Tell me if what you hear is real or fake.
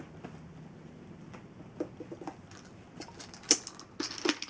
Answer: real